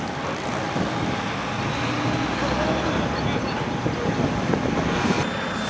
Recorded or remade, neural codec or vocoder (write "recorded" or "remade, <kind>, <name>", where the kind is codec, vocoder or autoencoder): recorded